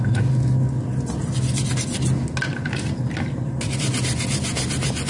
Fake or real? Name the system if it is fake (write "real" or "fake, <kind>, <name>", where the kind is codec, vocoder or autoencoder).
real